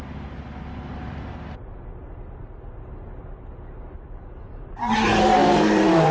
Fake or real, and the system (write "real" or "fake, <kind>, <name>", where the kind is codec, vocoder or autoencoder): real